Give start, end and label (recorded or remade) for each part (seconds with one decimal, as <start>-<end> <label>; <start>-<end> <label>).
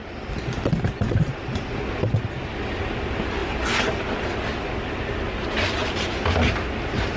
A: 0.0-7.2 recorded